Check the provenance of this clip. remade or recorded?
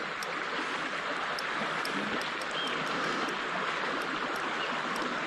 recorded